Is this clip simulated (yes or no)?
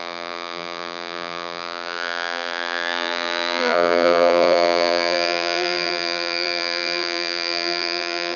yes